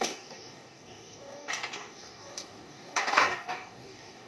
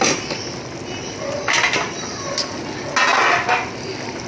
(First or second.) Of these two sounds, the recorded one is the second